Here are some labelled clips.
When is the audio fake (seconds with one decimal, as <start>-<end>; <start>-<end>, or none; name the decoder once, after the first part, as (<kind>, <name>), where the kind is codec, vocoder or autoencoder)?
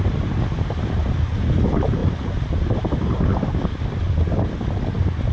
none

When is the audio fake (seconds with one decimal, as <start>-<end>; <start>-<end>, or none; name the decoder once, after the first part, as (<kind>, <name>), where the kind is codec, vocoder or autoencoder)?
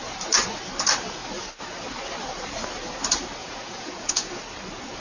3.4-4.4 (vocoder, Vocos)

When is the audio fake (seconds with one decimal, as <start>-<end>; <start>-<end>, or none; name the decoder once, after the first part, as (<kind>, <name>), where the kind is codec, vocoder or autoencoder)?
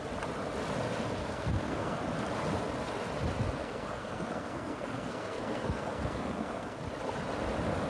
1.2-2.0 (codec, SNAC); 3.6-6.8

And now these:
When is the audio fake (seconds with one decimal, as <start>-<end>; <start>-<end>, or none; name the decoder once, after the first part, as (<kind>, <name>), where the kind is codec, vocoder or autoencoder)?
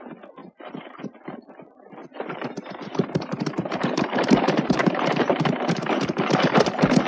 0.4-1.1 (vocoder, BigVGAN v2); 2.0-5.4